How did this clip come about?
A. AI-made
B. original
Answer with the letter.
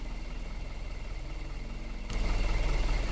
B